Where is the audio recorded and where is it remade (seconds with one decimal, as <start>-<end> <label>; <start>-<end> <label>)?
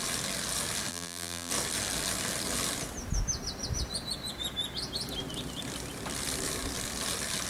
0.0-0.9 recorded; 0.9-1.5 remade; 1.5-7.5 recorded